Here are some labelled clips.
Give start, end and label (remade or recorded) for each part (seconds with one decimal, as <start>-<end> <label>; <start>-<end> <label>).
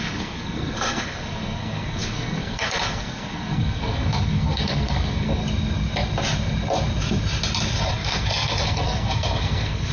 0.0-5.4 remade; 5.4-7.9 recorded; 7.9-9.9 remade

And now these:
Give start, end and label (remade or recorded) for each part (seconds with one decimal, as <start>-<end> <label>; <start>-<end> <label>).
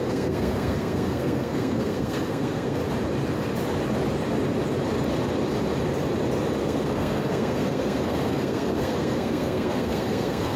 0.0-2.8 remade; 2.8-6.6 recorded; 6.6-10.6 remade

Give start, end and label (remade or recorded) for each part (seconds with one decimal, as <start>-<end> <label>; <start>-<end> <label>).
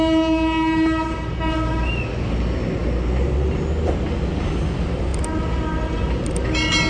0.0-6.9 recorded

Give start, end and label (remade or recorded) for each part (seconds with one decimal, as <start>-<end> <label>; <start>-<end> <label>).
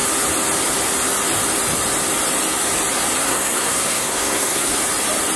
0.0-3.2 recorded; 3.2-4.8 remade; 4.8-5.4 recorded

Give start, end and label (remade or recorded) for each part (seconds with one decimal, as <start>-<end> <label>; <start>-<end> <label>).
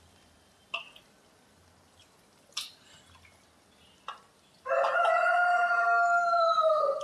0.0-7.0 recorded